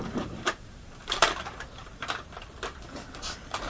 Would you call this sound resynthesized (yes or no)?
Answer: yes